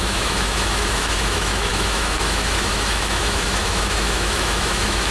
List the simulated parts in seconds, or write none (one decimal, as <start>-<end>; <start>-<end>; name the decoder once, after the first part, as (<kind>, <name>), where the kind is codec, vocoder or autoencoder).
0.0-5.1 (autoencoder, DAC-VAE)